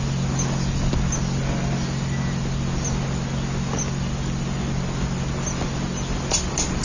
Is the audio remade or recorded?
recorded